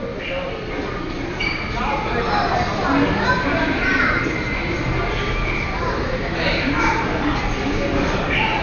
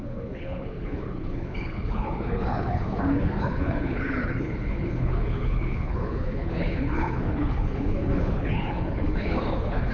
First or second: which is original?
first